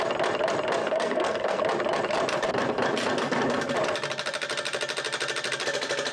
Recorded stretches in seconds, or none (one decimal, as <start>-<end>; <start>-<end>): 0.0-0.8; 1.6-6.1